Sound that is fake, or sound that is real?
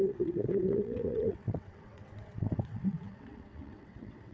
fake